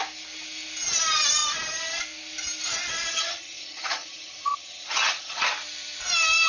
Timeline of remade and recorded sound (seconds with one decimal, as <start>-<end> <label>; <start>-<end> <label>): 0.0-3.1 recorded; 3.1-5.5 remade; 5.5-6.5 recorded